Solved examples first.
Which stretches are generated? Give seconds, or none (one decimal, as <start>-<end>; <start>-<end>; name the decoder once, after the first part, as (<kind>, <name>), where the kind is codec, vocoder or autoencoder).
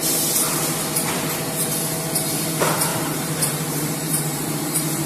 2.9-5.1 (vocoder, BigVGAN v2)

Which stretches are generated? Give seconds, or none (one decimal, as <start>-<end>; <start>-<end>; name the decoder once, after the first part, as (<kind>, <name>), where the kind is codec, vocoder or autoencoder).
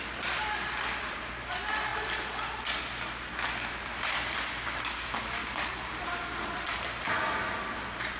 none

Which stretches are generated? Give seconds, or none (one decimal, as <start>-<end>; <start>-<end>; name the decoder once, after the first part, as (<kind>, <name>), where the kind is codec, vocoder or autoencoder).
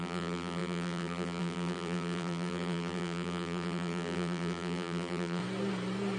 0.0-5.4 (vocoder, BigVGAN v2)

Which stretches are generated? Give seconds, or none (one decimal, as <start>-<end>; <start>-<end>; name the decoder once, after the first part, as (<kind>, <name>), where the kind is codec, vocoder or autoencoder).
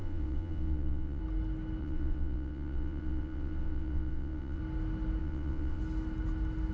0.0-1.2 (vocoder, WaveNeXt); 1.8-4.6; 5.2-5.8